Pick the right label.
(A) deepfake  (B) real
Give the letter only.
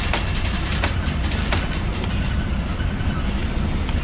B